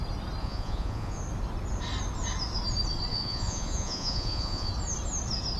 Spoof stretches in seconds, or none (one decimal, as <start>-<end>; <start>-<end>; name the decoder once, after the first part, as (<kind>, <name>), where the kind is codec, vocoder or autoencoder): 0.4-1.2 (vocoder, Vocos); 3.1-4.7